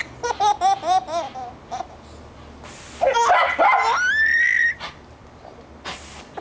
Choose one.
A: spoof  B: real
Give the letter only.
B